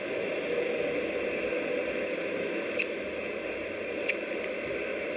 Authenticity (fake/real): real